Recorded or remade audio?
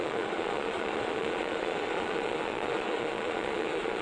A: remade